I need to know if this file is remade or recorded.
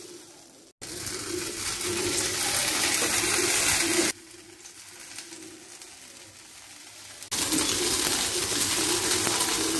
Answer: recorded